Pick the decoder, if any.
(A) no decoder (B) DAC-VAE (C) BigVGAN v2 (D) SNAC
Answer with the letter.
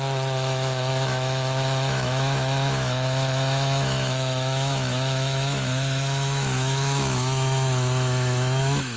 B